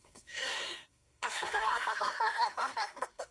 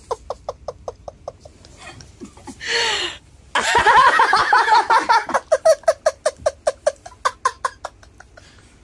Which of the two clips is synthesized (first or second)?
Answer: first